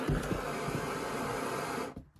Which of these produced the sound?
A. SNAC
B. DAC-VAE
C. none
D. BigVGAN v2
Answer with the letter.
D